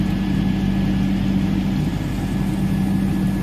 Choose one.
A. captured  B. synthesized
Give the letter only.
A